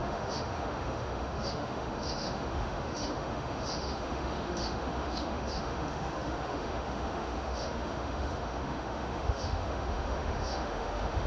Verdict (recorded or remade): remade